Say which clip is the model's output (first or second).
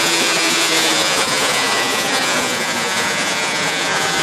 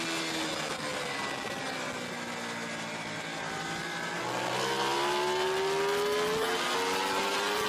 first